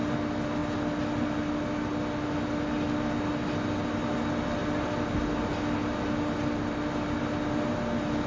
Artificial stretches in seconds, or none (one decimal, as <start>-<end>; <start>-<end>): none